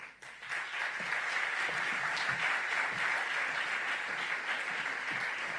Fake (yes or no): no